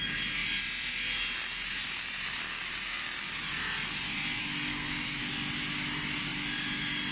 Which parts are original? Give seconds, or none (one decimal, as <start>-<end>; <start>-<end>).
0.0-4.4; 5.2-7.1